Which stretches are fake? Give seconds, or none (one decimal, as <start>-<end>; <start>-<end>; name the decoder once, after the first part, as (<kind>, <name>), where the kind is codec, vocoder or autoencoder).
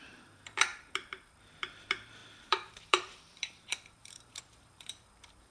0.0-5.5 (vocoder, BigVGAN v2)